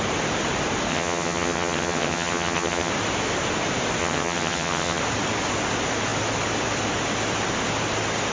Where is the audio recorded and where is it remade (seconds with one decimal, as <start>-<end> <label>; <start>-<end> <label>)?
0.0-0.9 recorded; 0.9-2.9 remade; 2.9-4.0 recorded; 4.0-5.0 remade; 5.0-8.3 recorded